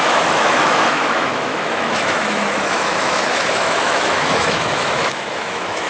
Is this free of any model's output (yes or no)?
no